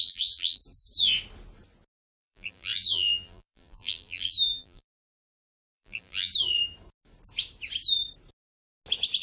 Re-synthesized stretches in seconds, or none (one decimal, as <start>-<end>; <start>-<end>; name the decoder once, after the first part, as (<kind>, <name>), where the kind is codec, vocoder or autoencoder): 0.0-0.6 (vocoder, BigVGAN v2); 1.9-6.3